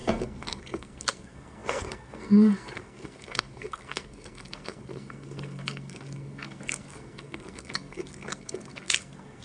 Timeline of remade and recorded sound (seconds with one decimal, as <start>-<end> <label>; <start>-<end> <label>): 0.0-9.4 remade